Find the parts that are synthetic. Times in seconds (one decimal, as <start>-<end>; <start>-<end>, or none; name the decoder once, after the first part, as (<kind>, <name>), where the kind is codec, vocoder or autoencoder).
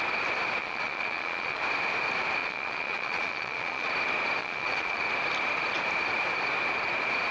0.6-1.6 (vocoder, Vocos); 2.4-3.9; 4.4-5.0